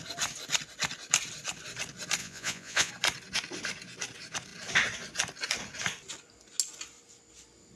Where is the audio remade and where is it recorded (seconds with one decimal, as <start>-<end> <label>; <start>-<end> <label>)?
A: 0.0-2.2 recorded; 2.2-2.9 remade; 2.9-7.8 recorded